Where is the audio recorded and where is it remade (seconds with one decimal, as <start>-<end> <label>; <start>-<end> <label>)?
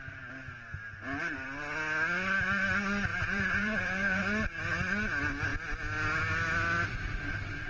0.0-3.1 recorded; 3.1-4.2 remade; 4.2-7.7 recorded